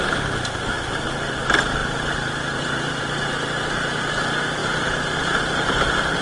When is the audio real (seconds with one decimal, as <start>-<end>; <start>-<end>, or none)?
0.0-1.8; 3.1-4.6; 5.2-6.2